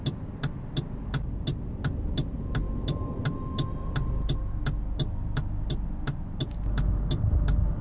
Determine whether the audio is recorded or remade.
recorded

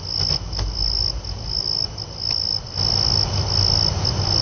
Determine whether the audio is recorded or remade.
recorded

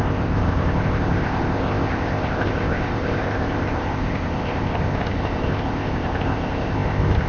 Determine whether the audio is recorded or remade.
remade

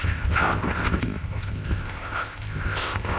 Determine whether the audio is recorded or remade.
remade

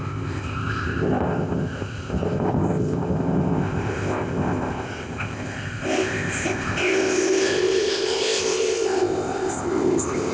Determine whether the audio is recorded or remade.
remade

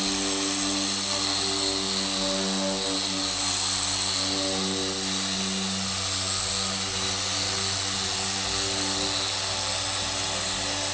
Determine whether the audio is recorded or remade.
recorded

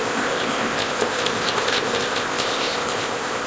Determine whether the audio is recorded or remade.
remade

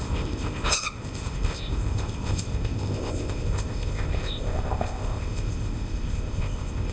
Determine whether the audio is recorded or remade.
remade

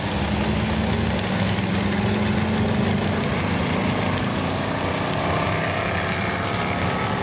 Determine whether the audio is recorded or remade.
recorded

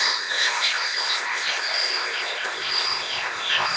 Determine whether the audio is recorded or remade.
remade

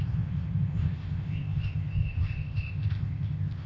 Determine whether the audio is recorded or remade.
remade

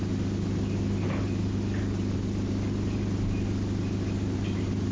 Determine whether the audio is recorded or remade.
recorded